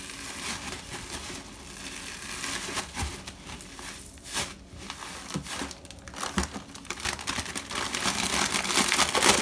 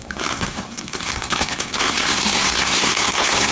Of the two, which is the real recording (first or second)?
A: first